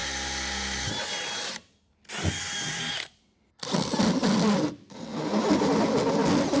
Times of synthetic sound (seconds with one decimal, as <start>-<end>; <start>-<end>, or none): none